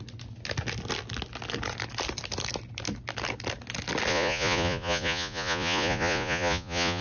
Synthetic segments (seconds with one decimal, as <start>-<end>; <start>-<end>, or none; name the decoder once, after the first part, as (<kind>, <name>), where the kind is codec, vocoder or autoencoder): 4.1-7.0 (vocoder, Vocos)